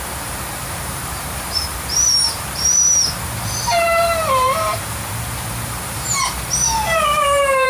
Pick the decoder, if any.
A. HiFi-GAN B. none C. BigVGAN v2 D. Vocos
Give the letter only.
C